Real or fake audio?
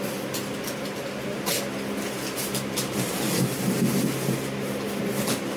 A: real